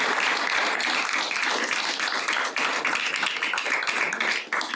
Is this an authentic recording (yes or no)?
yes